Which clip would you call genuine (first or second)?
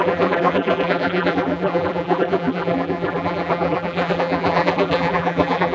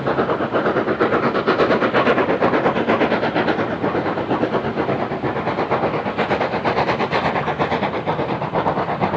second